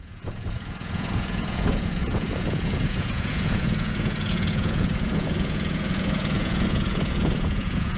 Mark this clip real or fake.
fake